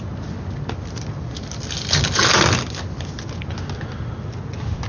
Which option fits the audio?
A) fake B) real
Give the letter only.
B